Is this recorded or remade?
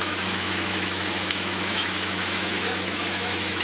remade